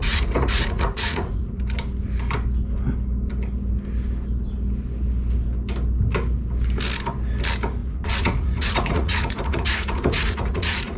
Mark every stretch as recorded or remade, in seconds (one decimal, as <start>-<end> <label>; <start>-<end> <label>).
0.0-1.6 remade; 1.6-7.8 recorded; 7.8-11.0 remade